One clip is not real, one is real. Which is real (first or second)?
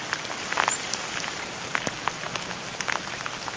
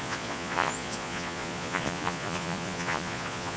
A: first